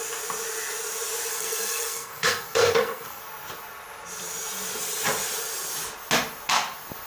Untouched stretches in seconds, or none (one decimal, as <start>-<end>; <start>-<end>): 0.0-1.3; 3.2-7.1